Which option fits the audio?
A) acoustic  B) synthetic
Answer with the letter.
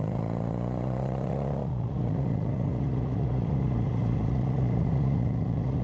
B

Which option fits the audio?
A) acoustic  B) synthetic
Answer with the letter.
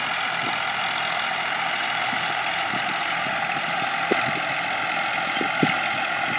A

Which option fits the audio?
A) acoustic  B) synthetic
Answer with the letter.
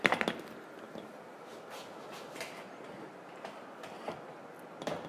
A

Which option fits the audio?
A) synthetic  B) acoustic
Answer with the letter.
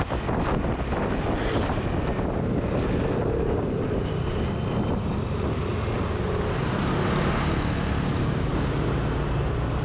B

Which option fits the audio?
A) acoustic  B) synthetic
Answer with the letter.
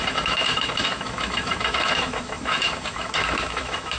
B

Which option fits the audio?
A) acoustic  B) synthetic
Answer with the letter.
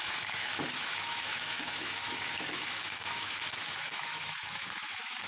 B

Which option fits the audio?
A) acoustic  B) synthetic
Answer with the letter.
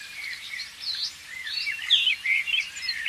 B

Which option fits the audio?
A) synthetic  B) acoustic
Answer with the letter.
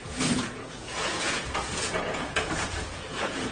A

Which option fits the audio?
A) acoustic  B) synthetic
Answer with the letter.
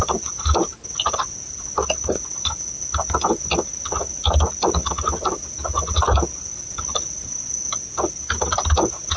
A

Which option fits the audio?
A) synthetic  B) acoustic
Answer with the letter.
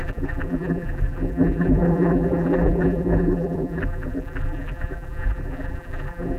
A